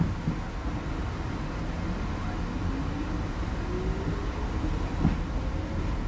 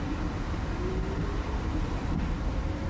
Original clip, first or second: first